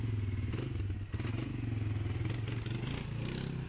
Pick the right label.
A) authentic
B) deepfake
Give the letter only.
A